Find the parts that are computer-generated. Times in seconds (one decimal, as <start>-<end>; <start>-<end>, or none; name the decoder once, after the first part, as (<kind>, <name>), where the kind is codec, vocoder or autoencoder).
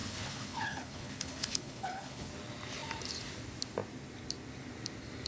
0.0-2.3 (codec, HILCodec)